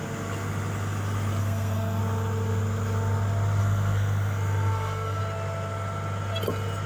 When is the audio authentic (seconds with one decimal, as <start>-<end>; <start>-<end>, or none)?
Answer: 0.0-1.4; 2.0-3.6; 5.2-6.9